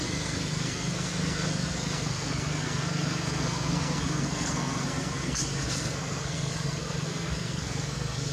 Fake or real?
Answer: fake